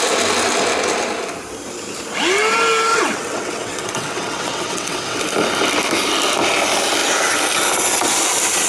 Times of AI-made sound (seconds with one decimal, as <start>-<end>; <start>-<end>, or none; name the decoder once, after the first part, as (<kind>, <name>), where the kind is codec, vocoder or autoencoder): 2.9-5.2 (vocoder, WaveNeXt)